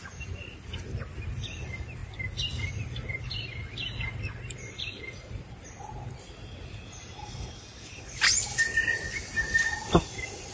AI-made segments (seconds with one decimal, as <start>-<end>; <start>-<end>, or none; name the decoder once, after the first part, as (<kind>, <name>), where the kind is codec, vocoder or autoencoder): none

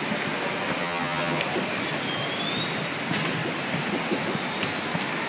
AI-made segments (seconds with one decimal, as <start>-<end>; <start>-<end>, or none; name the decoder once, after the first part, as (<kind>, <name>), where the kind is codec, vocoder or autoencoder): 0.8-1.4 (vocoder, HiFi-GAN)

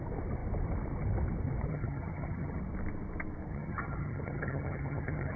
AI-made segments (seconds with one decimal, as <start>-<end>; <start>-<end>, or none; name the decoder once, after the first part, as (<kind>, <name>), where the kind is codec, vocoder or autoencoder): 1.7-2.6 (vocoder, HiFi-GAN); 3.5-5.4

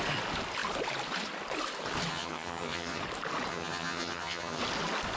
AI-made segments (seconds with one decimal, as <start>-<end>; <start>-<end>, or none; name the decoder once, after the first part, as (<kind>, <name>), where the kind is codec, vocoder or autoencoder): 2.1-3.0 (vocoder, HiFi-GAN); 3.5-4.6

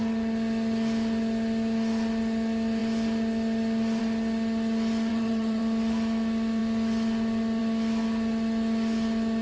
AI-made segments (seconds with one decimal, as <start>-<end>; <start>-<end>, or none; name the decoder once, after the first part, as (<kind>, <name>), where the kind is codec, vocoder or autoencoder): 5.1-5.6 (vocoder, HiFi-GAN)